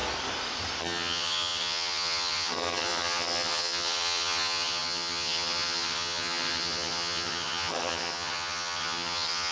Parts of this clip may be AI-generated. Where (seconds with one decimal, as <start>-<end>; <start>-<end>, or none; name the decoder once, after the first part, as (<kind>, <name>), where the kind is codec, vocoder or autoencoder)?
0.8-9.5 (vocoder, HiFi-GAN)